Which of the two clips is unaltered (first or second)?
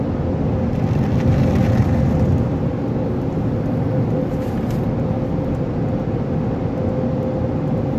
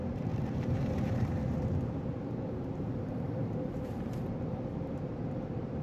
first